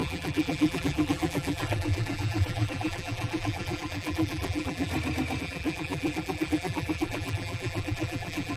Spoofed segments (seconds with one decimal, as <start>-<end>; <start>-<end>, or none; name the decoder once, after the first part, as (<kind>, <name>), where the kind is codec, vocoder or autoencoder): 0.0-4.9 (vocoder, BigVGAN v2); 5.4-8.6